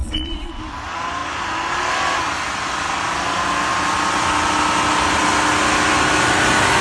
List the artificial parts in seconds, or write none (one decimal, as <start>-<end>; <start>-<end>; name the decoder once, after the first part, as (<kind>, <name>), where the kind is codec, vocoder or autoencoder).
0.0-0.6 (vocoder, Vocos)